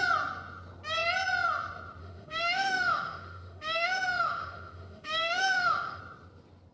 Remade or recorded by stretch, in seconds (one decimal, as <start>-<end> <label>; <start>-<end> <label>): 0.0-2.0 recorded; 2.0-6.0 remade; 6.0-6.7 recorded